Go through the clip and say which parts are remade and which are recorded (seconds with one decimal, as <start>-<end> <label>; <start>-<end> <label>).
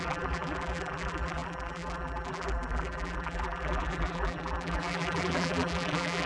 0.0-6.3 remade